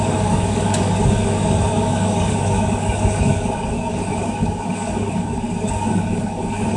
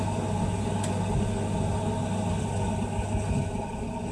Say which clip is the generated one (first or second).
first